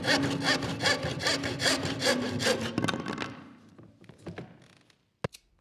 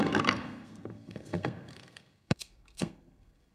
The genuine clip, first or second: first